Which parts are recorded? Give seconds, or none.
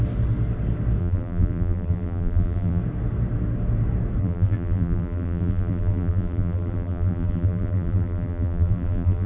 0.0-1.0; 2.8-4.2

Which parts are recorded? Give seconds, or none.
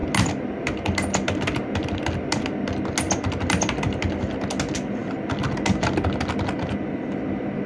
0.0-7.7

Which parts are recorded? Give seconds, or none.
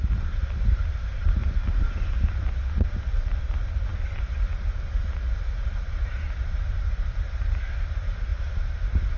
0.0-9.2